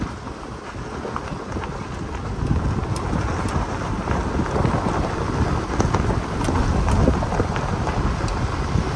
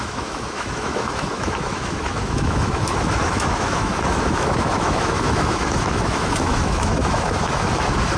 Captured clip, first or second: first